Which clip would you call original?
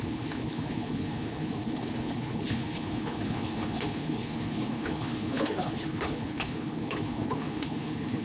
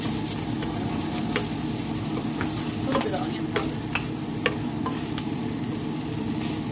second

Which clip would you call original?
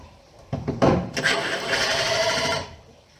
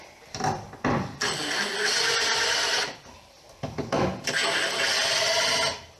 second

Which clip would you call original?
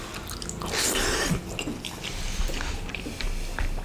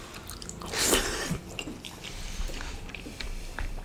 first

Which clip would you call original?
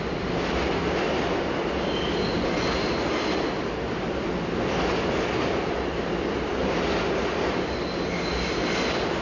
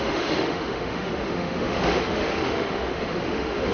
first